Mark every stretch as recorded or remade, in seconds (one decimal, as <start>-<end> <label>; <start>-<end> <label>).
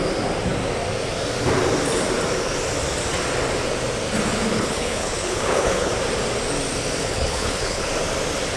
0.0-4.5 recorded; 4.5-5.9 remade; 5.9-7.0 recorded; 7.0-7.9 remade; 7.9-8.6 recorded